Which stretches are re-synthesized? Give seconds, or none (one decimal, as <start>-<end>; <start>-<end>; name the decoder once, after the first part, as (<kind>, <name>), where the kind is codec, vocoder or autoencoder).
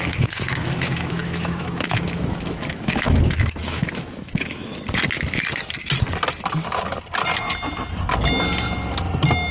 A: 0.0-4.7 (autoencoder, DAC-VAE)